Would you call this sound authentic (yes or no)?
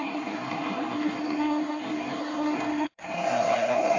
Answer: no